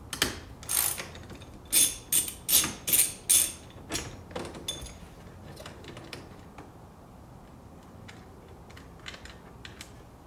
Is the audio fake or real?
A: real